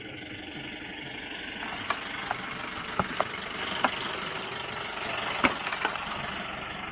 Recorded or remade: recorded